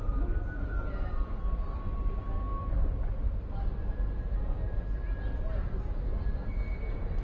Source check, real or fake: real